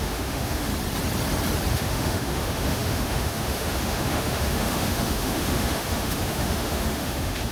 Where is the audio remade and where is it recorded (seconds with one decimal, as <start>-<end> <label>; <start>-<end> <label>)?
0.0-0.7 remade; 0.7-1.7 recorded; 1.7-7.5 remade